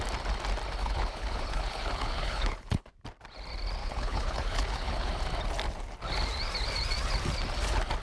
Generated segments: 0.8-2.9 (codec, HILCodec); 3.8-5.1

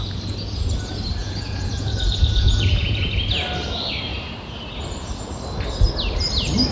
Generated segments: 1.2-3.1 (vocoder, Vocos)

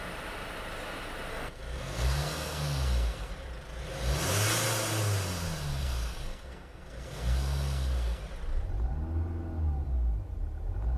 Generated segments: 1.3-3.3 (codec, SNAC); 5.8-8.2

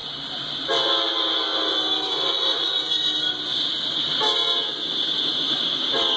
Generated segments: none

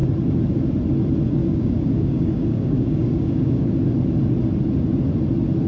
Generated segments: 1.4-3.7 (codec, DAC)